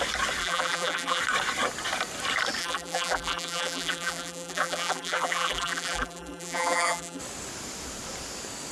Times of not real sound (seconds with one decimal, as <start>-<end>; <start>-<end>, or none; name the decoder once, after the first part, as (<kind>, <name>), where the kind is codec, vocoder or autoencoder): 0.4-1.2 (vocoder, BigVGAN v2); 2.6-7.2